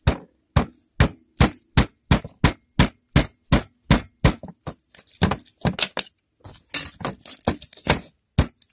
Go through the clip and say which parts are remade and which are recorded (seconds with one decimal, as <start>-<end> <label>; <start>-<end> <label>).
0.0-8.7 recorded